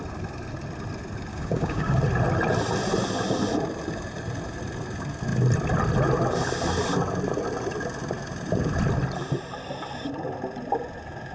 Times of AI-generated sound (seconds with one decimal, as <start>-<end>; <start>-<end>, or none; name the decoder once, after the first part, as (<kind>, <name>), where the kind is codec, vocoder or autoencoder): 1.3-2.0 (codec, DAC)